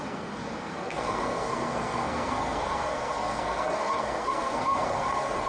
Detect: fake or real fake